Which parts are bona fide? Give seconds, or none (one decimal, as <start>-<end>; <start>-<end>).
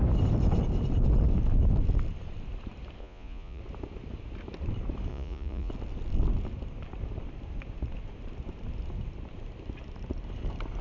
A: 0.0-3.0; 3.6-5.1; 5.7-10.8